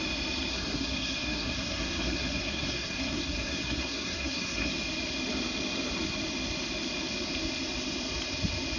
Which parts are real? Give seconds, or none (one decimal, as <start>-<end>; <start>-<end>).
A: 0.0-0.5; 4.7-8.8